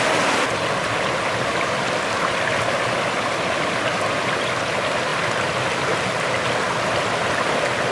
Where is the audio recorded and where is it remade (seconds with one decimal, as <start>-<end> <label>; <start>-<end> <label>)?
0.0-7.9 recorded